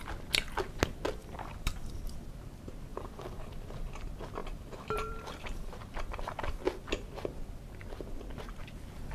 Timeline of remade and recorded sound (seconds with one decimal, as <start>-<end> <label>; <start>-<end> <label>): 0.0-1.2 recorded; 1.2-2.0 remade; 2.0-2.9 recorded; 2.9-3.9 remade; 3.9-4.4 recorded; 4.4-6.6 remade; 6.6-9.1 recorded